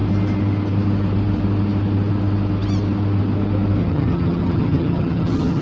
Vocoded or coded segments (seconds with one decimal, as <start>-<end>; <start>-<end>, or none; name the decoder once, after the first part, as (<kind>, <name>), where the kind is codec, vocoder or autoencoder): 3.8-5.6 (vocoder, HiFi-GAN)